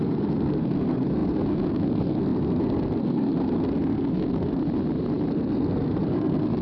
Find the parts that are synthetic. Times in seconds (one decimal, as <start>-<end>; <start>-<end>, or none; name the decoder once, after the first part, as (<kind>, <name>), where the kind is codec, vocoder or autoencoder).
0.0-4.6 (codec, SNAC); 5.3-6.6